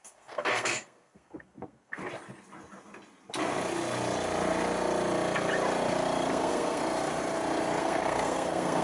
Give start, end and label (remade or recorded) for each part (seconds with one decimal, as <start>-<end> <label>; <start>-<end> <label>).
0.0-2.0 remade; 2.0-6.3 recorded; 6.3-6.8 remade; 6.8-7.8 recorded; 7.8-8.8 remade